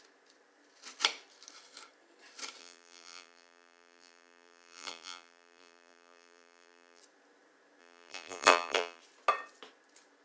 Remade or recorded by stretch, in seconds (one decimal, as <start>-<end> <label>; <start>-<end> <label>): 0.0-2.6 recorded; 2.6-7.0 remade; 7.0-7.8 recorded; 7.8-9.0 remade; 9.0-10.2 recorded